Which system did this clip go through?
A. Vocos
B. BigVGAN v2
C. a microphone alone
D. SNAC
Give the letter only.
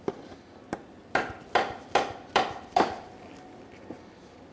B